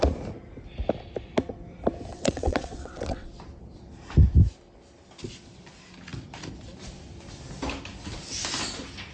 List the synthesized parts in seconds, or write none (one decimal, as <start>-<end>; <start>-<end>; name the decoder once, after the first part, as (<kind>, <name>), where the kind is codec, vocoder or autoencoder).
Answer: 2.1-3.3 (vocoder, WaveNeXt)